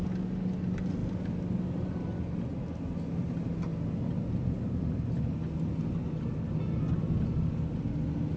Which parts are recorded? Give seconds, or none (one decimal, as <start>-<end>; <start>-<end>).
0.0-8.4